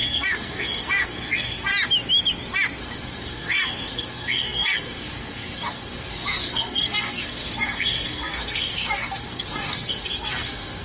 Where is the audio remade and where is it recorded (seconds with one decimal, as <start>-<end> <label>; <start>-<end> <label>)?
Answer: 0.0-1.7 remade; 1.7-2.8 recorded; 2.8-10.8 remade